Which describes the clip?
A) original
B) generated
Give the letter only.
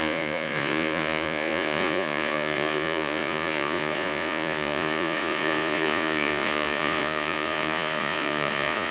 B